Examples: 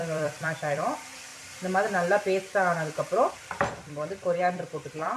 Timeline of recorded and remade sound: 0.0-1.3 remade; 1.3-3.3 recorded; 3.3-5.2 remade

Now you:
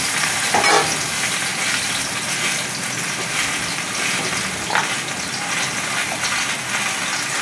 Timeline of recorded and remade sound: 0.0-7.4 recorded

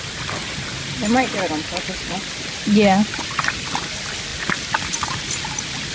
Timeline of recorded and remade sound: 0.0-0.7 recorded; 0.7-1.4 remade; 1.4-2.2 recorded; 2.2-3.2 remade; 3.2-5.9 recorded

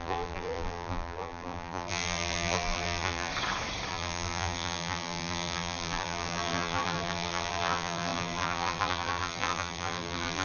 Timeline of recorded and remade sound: 0.0-3.3 remade; 3.3-3.9 recorded; 3.9-10.4 remade

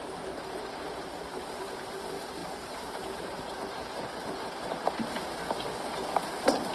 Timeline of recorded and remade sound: 0.0-5.4 remade; 5.4-6.3 recorded; 6.3-6.7 remade